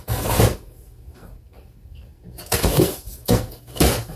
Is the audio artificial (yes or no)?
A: yes